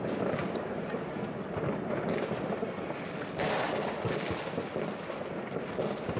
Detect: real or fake real